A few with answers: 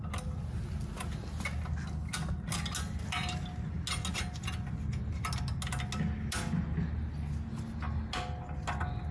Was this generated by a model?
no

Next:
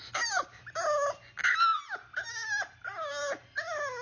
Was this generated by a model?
no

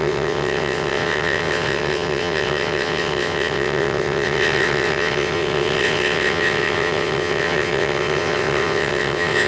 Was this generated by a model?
yes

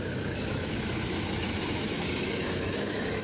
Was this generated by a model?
yes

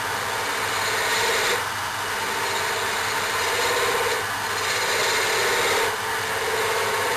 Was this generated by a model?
no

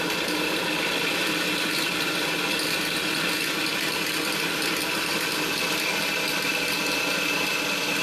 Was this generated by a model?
no